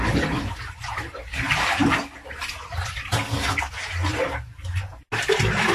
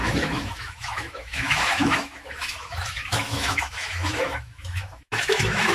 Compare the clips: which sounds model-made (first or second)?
second